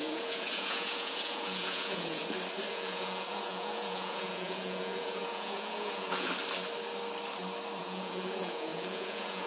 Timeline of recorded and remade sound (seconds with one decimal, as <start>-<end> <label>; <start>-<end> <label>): 0.0-2.2 remade; 2.2-2.7 recorded; 2.7-6.3 remade; 6.3-7.8 recorded; 7.8-9.5 remade